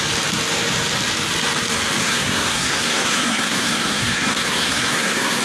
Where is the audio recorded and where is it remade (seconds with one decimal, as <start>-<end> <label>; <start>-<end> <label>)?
0.0-2.0 recorded; 2.0-5.4 remade